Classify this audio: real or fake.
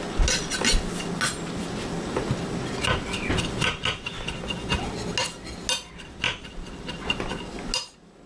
real